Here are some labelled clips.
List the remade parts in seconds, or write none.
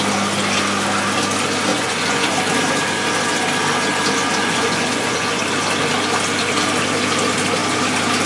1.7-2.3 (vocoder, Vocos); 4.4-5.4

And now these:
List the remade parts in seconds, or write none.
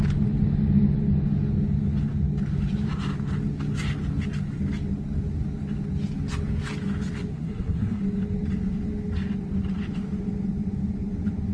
7.3-8.0 (codec, SNAC)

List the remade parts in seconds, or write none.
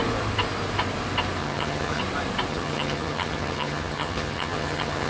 1.4-2.0 (vocoder, HiFi-GAN); 2.5-5.1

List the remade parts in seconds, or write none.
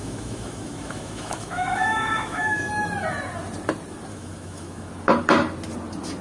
0.0-2.7 (autoencoder, DAC-VAE); 4.1-4.9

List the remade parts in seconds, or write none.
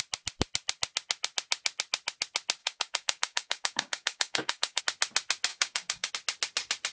2.6-4.8 (codec, DAC); 5.5-6.1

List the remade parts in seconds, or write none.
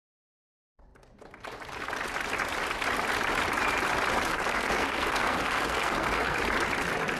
4.3-6.4 (codec, SNAC)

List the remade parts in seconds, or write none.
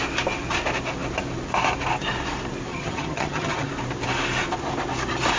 2.7-3.7 (vocoder, HiFi-GAN)